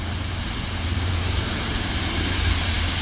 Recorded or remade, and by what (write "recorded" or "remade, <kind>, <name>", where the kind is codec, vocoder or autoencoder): remade, vocoder, BigVGAN v2